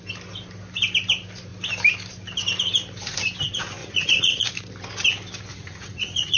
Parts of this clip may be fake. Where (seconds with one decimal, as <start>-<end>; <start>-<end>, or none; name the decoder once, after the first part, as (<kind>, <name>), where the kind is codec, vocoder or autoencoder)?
3.8-4.5 (vocoder, Vocos); 5.5-6.4